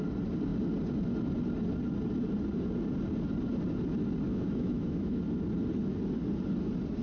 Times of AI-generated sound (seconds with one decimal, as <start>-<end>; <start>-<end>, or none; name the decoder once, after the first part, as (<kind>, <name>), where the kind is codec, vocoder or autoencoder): 4.3-5.2 (autoencoder, DAC-VAE)